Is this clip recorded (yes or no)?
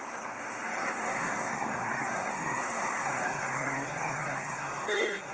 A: no